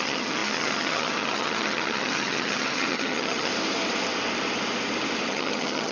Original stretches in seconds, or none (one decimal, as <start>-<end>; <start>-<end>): 3.5-5.3